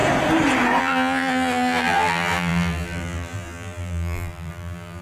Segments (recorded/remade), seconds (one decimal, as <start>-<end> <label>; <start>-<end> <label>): 0.0-0.8 recorded; 0.8-5.0 remade